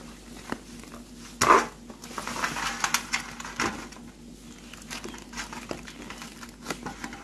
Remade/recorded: recorded